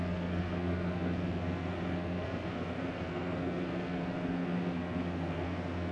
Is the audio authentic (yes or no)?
no